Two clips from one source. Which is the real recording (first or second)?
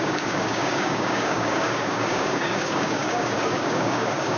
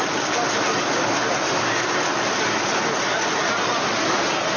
second